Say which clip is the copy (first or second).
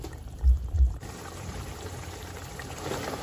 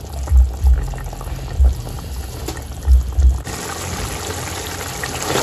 first